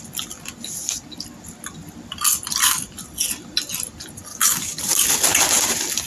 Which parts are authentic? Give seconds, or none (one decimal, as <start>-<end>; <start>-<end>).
0.0-4.3; 4.8-6.1